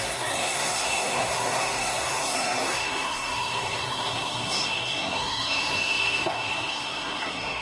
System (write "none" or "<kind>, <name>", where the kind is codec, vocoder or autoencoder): codec, SNAC